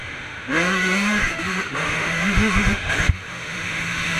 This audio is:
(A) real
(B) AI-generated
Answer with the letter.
B